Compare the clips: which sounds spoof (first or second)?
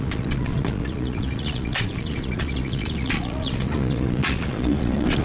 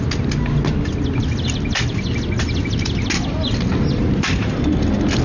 first